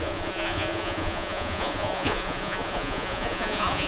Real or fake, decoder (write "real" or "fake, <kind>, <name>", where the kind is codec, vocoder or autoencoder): fake, vocoder, Vocos